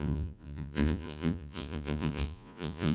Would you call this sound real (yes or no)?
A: no